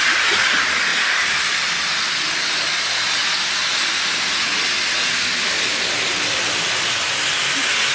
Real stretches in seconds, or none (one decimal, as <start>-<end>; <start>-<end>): 0.0-7.9